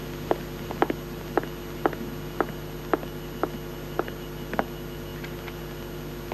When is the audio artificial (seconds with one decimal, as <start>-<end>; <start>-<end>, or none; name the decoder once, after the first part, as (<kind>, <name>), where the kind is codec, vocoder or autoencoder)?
none